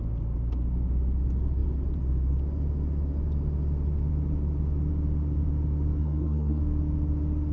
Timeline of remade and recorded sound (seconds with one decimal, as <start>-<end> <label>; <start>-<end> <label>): 0.0-6.0 recorded; 6.0-6.6 remade; 6.6-7.5 recorded